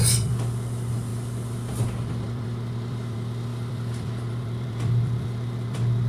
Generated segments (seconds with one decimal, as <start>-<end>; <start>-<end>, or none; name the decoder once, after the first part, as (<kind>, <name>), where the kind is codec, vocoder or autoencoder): 0.0-1.1 (vocoder, BigVGAN v2); 1.7-6.1